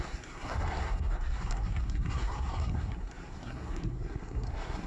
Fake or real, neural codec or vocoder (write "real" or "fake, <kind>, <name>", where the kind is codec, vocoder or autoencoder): fake, codec, SNAC